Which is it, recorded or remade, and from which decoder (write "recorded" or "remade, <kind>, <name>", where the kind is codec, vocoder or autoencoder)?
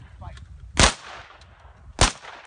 recorded